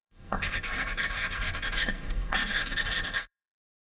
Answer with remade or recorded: remade